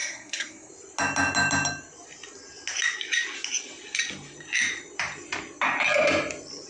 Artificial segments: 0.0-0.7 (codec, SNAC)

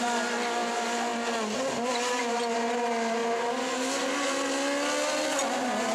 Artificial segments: none

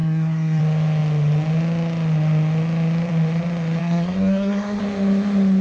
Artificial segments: 0.0-0.6 (codec, SNAC); 3.8-4.8

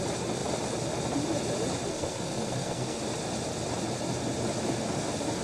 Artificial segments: 1.9-3.0 (codec, SNAC)

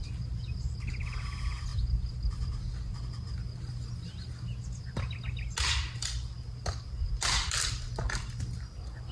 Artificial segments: none

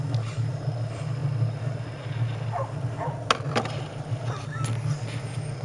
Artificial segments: none